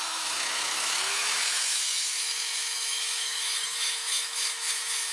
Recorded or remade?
remade